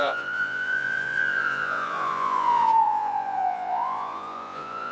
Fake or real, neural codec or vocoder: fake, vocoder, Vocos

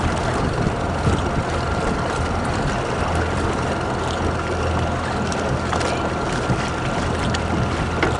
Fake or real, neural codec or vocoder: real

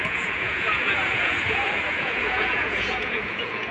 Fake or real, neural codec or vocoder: fake, vocoder, Vocos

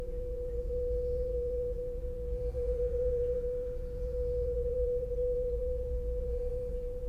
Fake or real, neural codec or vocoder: fake, vocoder, Vocos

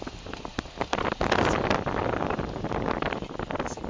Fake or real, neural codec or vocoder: real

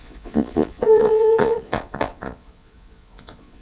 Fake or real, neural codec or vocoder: fake, vocoder, Vocos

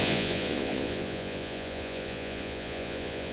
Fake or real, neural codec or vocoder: fake, vocoder, Vocos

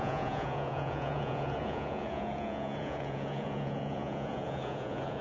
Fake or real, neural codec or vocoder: fake, vocoder, Vocos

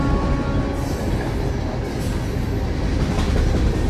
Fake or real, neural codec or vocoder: real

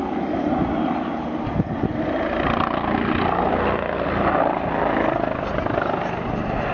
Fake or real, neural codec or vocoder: real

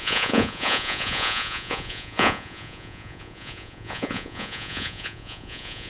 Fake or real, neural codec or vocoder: fake, vocoder, Vocos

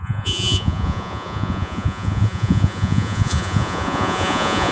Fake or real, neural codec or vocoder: fake, vocoder, Vocos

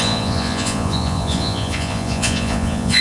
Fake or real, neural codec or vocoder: fake, vocoder, Vocos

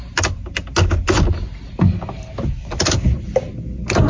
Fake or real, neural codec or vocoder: real